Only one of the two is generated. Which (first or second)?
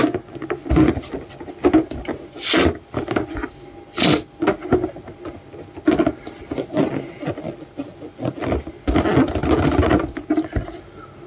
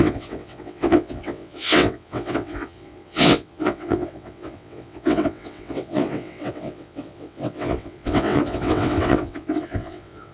second